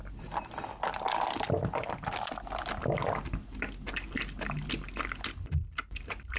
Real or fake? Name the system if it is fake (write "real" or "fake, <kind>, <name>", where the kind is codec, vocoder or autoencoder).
real